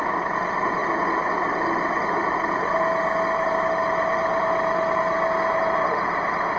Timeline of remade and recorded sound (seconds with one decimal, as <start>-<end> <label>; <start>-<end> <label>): 0.0-6.6 recorded

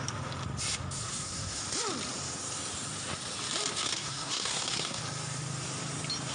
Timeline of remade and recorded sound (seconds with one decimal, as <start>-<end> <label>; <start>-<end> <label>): 0.0-1.0 recorded; 1.0-1.6 remade; 1.6-3.8 recorded; 3.8-5.0 remade; 5.0-6.3 recorded

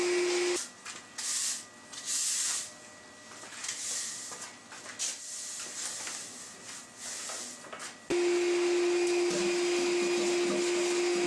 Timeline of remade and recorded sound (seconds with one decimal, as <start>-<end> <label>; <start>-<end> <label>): 0.0-11.3 recorded

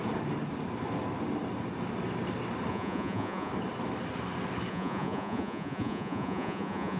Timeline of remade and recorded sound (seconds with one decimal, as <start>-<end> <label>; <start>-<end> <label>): 0.0-2.7 recorded; 2.7-3.5 remade; 3.5-4.7 recorded; 4.7-7.0 remade

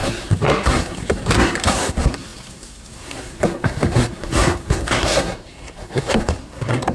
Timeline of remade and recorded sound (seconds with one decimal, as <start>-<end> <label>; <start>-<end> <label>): 0.0-6.9 remade

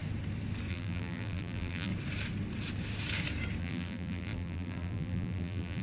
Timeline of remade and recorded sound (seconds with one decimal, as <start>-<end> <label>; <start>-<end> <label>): 0.0-0.7 recorded; 0.7-1.9 remade; 1.9-3.6 recorded; 3.6-5.8 remade

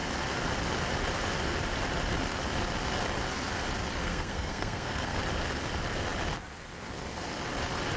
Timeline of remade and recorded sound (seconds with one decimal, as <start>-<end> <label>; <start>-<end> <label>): 0.0-4.0 recorded; 4.0-5.2 remade; 5.2-8.0 recorded